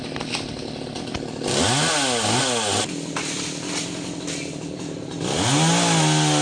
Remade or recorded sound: recorded